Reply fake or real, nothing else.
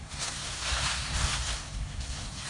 fake